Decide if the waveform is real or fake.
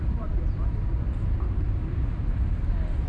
fake